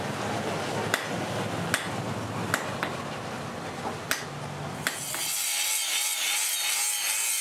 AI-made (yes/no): no